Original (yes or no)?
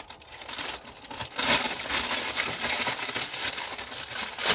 yes